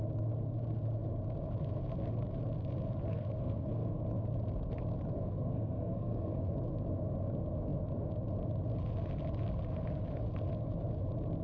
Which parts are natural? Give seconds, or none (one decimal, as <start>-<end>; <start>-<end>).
0.0-3.1; 4.0-5.2; 6.5-11.4